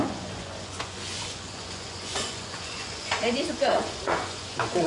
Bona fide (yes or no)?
no